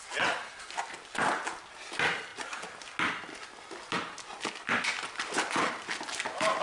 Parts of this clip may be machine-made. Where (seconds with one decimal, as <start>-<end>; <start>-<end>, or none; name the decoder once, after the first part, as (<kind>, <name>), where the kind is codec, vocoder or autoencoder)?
none